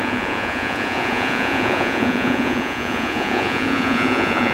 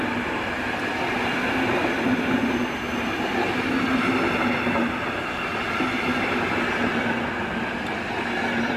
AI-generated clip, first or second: first